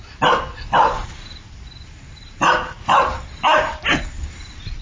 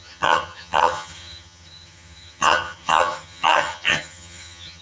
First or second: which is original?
first